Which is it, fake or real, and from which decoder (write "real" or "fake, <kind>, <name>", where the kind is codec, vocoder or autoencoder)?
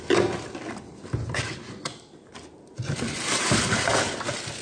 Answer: real